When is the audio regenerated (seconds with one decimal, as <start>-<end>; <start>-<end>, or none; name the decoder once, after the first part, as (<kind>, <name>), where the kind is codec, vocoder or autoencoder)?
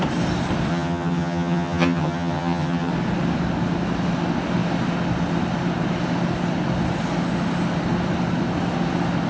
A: 0.7-2.9 (vocoder, HiFi-GAN)